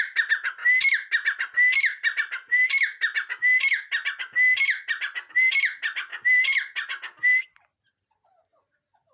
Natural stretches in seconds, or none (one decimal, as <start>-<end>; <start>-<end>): 0.0-9.1